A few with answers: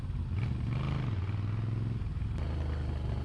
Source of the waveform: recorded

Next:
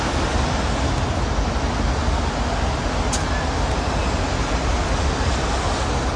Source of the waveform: recorded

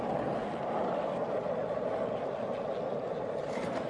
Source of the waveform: recorded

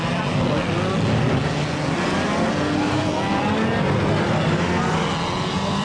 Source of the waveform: recorded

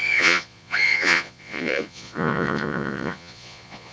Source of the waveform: remade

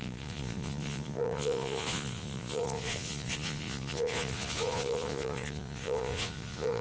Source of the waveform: remade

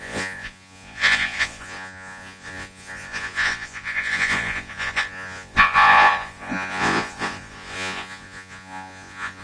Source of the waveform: remade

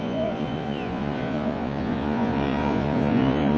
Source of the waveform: remade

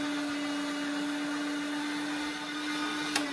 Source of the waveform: recorded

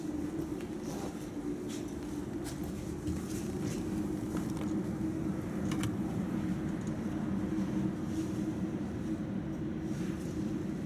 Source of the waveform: recorded